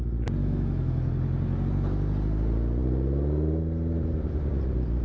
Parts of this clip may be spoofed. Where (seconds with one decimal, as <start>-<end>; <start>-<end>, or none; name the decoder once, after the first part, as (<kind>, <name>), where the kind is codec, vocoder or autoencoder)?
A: 0.4-1.1 (autoencoder, DAC-VAE)